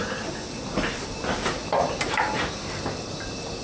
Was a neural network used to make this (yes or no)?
no